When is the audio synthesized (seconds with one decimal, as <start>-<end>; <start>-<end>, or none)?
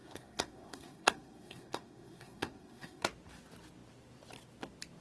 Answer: 0.0-3.0